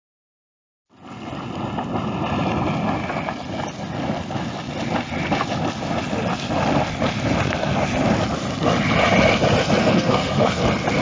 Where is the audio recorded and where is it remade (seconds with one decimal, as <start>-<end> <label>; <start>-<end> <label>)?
0.0-9.8 recorded; 9.8-10.6 remade; 10.6-11.0 recorded